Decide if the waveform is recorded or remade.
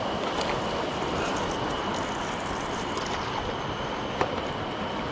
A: recorded